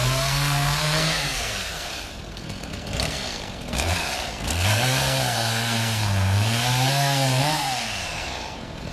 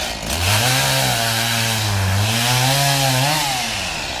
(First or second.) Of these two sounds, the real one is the second